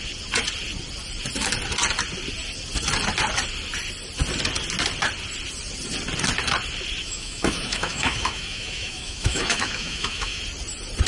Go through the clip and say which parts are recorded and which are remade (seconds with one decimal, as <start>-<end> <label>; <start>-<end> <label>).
0.0-7.0 recorded; 7.0-10.4 remade; 10.4-11.1 recorded